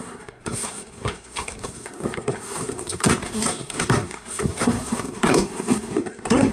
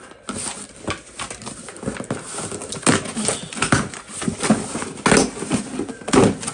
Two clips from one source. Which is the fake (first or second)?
first